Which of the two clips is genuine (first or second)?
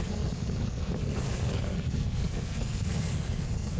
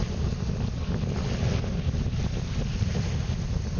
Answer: second